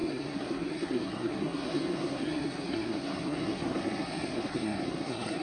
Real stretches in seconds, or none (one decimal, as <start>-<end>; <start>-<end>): none